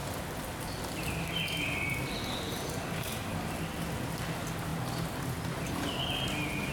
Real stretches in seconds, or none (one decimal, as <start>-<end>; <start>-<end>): 0.0-6.7